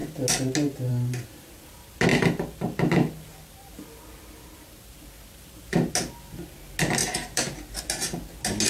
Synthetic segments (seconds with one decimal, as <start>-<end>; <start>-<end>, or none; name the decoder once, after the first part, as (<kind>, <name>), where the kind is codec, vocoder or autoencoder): 7.0-7.8 (vocoder, BigVGAN v2)